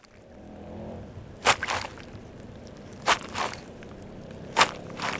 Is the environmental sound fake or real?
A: fake